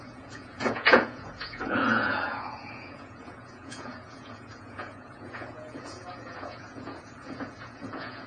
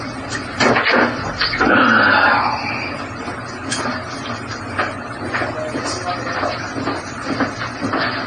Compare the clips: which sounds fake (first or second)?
first